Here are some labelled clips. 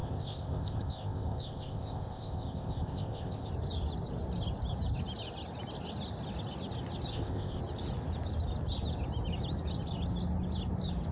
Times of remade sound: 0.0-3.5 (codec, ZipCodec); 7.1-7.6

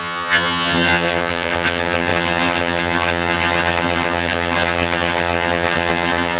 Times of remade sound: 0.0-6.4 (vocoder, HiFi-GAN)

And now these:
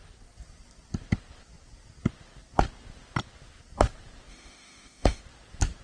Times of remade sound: 4.3-5.2 (autoencoder, DAC-VAE)

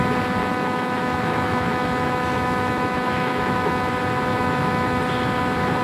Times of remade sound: 0.4-3.9 (autoencoder, DAC-VAE); 4.3-5.0

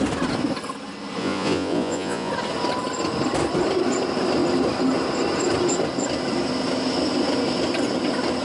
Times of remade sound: 1.2-2.3 (vocoder, Vocos)

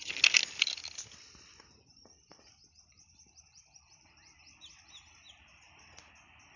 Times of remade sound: 0.4-4.4 (vocoder, BigVGAN v2)

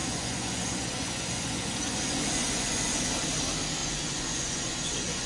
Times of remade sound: 0.0-3.1 (vocoder, Vocos); 3.8-5.3